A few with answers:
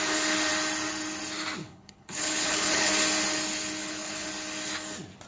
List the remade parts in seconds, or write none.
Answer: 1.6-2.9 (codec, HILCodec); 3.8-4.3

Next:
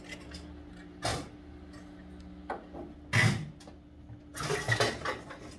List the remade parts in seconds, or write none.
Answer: none

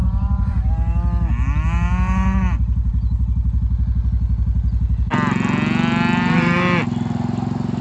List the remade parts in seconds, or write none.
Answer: 0.0-0.7 (vocoder, Vocos)

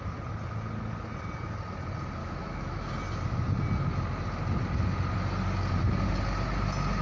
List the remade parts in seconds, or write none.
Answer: 2.2-2.9 (autoencoder, DAC-VAE)

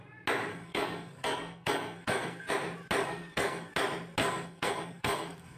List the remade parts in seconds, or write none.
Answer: 0.5-2.5 (codec, SNAC); 3.0-3.7; 4.2-5.6

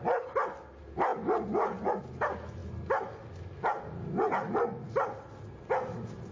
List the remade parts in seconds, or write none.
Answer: none

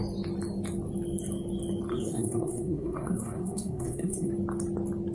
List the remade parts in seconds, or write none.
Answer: 1.9-4.3 (codec, SNAC)